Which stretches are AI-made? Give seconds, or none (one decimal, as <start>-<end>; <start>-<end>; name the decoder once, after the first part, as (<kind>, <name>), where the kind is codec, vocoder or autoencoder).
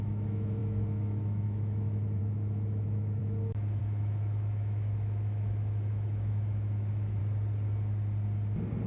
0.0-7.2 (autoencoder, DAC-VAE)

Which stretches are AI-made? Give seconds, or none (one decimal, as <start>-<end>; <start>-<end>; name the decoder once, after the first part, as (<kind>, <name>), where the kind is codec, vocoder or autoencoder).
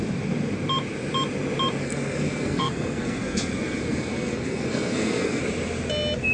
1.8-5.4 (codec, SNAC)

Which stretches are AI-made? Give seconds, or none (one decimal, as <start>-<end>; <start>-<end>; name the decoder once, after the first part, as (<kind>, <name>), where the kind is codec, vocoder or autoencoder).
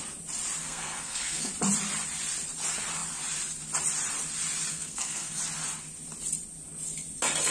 0.6-1.5 (codec, SNAC); 4.7-5.4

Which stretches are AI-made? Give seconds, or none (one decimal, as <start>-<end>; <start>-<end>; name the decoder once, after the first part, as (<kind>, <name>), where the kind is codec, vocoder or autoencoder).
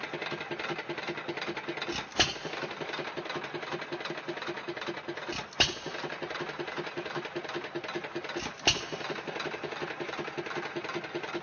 none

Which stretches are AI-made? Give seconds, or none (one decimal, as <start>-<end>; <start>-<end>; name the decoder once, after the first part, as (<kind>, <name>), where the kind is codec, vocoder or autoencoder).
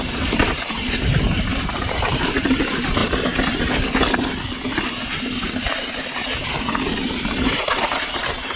0.0-3.0 (vocoder, BigVGAN v2); 5.7-6.2; 6.8-8.6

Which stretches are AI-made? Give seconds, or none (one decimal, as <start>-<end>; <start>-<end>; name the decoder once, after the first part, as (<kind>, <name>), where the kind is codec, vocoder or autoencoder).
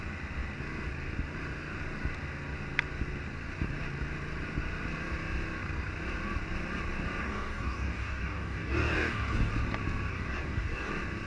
7.2-9.5 (codec, DAC); 10.1-10.9